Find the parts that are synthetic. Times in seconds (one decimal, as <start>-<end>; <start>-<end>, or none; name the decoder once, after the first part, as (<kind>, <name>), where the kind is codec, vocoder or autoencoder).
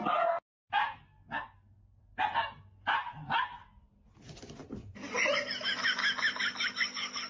none